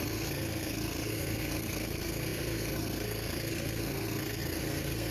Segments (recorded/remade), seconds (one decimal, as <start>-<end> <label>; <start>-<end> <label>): 0.0-5.1 remade